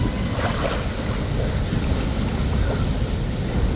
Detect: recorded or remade recorded